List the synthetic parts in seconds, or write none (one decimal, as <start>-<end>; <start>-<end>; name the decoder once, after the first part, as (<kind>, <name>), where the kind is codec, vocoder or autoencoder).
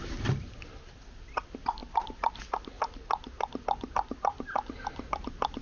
none